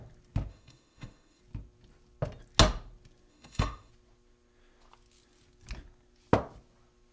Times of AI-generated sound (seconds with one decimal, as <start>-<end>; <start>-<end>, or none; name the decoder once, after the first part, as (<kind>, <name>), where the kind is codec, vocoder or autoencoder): 0.5-1.4 (autoencoder, DAC-VAE); 3.3-3.9